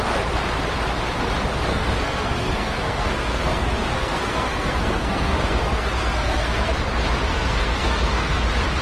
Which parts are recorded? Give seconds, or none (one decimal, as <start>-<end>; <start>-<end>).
0.0-1.7; 6.8-7.3; 8.4-8.8